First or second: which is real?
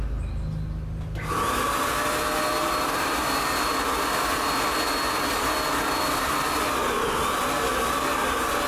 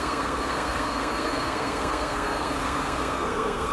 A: first